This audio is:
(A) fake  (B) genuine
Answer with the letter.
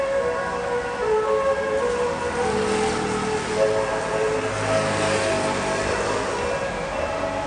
B